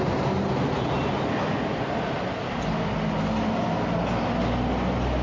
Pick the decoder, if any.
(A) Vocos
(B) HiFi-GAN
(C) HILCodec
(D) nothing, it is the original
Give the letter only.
D